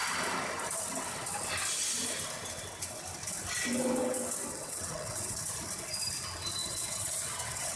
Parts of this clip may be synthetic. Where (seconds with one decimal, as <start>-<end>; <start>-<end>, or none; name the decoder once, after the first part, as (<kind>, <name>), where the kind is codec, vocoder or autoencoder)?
4.5-5.4 (vocoder, WaveNeXt); 6.6-7.8